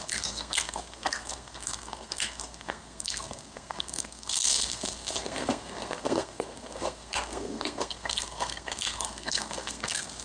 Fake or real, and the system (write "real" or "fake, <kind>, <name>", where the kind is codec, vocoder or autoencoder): fake, codec, SNAC